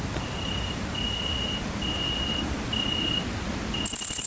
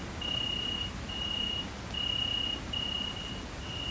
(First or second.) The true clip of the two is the second